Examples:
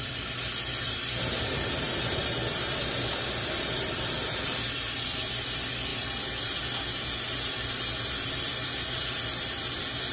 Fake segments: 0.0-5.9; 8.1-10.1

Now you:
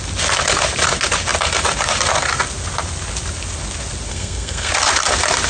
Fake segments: 4.1-4.7

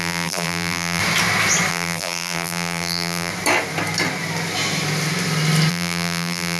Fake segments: 0.0-1.0; 1.7-3.3; 5.7-6.6

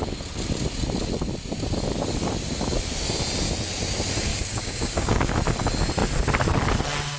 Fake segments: 4.3-5.3

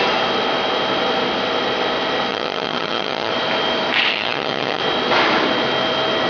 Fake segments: 2.3-3.3; 4.1-4.8

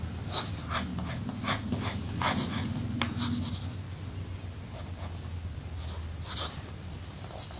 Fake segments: none

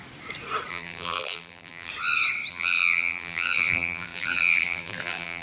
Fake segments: 0.7-1.9; 2.5-5.4